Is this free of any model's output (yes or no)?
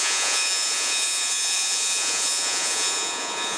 no